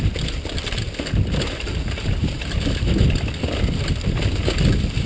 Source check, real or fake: real